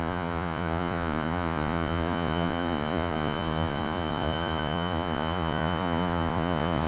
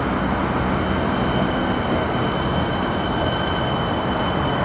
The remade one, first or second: first